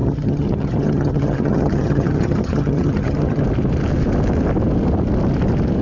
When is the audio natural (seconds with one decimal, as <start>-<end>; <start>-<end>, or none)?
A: 3.4-5.8